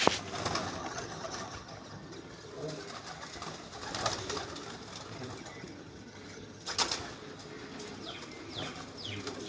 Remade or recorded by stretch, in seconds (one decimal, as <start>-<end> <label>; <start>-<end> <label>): 0.0-0.8 recorded; 0.8-2.5 remade; 2.5-5.4 recorded; 5.4-6.9 remade; 6.9-9.5 recorded

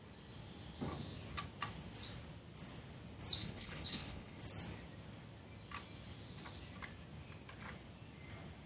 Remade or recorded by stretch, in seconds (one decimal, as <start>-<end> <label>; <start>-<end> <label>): 0.0-3.4 recorded; 3.4-4.4 remade; 4.4-8.7 recorded

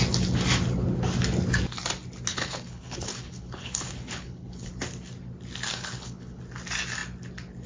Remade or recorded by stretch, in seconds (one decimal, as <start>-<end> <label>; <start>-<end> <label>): 0.0-2.3 recorded; 2.3-4.7 remade; 4.7-5.7 recorded; 5.7-6.4 remade; 6.4-7.7 recorded

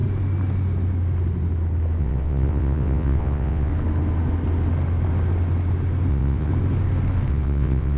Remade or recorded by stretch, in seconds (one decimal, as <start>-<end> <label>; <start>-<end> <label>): 0.0-2.0 recorded; 2.0-3.7 remade; 3.7-6.1 recorded; 6.1-6.5 remade; 6.5-7.3 recorded; 7.3-8.0 remade

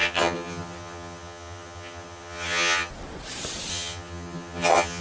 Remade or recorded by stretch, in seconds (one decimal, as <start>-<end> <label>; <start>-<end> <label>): 0.0-2.9 remade; 2.9-3.7 recorded; 3.7-5.0 remade

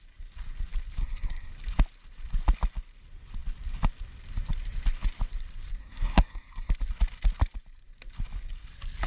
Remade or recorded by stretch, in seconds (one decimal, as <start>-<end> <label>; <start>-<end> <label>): 0.0-1.0 recorded; 1.0-1.5 remade; 1.5-5.8 recorded; 5.8-6.7 remade; 6.7-9.1 recorded

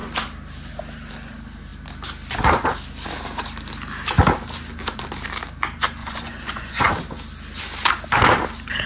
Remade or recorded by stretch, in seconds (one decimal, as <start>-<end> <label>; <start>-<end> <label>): 0.0-6.0 recorded; 6.0-6.9 remade; 6.9-8.9 recorded